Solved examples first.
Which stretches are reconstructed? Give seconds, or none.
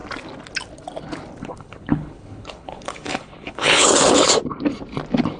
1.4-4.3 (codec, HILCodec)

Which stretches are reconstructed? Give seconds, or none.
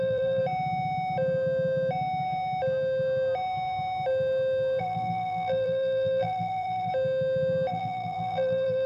0.0-0.4 (vocoder, BigVGAN v2); 4.8-6.9; 7.7-8.9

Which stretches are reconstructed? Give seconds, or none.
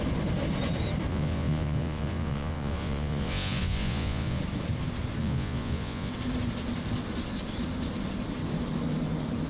1.1-4.4 (vocoder, Vocos); 5.2-6.1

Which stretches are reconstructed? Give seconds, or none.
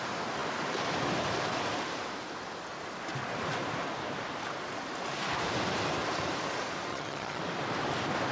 6.9-7.4 (vocoder, HiFi-GAN)